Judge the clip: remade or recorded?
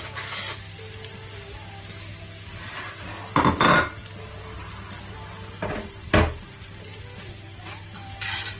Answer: recorded